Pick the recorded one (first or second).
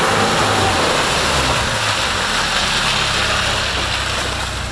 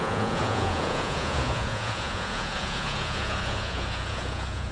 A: first